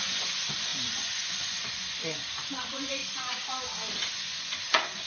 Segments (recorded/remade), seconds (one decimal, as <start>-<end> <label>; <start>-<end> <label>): 0.0-3.0 remade; 3.0-4.1 recorded; 4.1-5.1 remade